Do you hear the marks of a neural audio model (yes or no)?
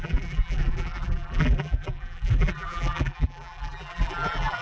yes